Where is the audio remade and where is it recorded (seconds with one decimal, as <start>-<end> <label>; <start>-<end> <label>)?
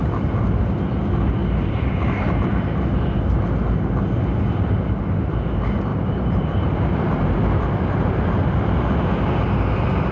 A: 0.0-5.9 recorded; 5.9-9.1 remade; 9.1-10.1 recorded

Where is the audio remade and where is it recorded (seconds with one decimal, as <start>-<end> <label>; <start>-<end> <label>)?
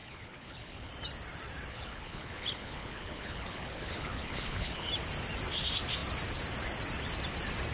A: 0.0-0.9 remade; 0.9-1.7 recorded; 1.7-4.9 remade; 4.9-7.7 recorded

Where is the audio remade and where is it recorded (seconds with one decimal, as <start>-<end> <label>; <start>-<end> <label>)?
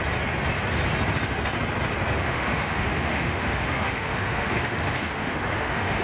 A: 0.0-2.2 recorded; 2.2-6.0 remade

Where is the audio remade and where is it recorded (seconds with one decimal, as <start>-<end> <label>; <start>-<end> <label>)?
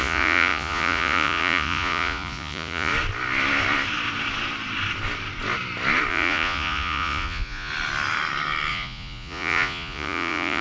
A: 0.0-2.9 remade; 2.9-6.1 recorded; 6.1-7.7 remade; 7.7-8.7 recorded; 8.7-10.6 remade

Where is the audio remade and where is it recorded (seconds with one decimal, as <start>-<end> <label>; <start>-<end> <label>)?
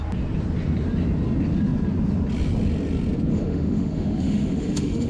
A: 0.0-3.3 recorded; 3.3-5.1 remade